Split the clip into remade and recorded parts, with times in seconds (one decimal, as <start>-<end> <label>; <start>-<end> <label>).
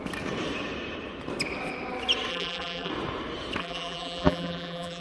0.0-2.3 recorded; 2.3-2.9 remade; 2.9-3.6 recorded; 3.6-5.0 remade